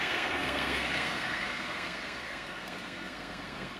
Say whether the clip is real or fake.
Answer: fake